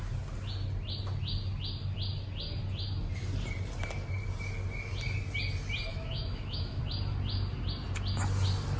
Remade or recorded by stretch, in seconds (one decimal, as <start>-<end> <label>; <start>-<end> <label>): 0.0-5.9 recorded; 5.9-6.8 remade; 6.8-8.8 recorded